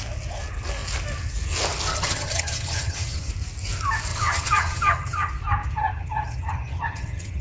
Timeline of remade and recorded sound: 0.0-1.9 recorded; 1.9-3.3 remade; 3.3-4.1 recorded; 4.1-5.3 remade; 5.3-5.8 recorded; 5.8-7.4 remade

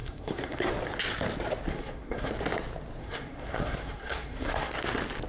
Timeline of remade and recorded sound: 0.0-0.7 remade; 0.7-1.7 recorded; 1.7-2.3 remade; 2.3-3.0 recorded; 3.0-4.7 remade; 4.7-5.3 recorded

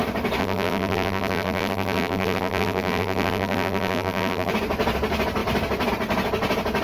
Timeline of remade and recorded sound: 0.0-0.4 recorded; 0.4-4.5 remade; 4.5-6.8 recorded

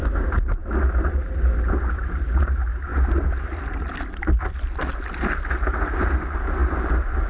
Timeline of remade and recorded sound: 0.0-7.3 recorded

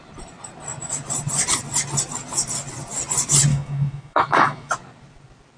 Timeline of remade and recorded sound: 0.0-3.5 recorded; 3.5-4.7 remade; 4.7-5.6 recorded

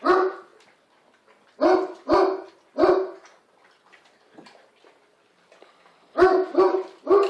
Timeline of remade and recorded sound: 0.0-7.3 recorded